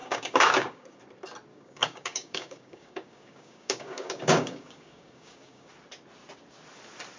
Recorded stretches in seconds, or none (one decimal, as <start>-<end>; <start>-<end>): 1.0-1.5; 5.7-7.2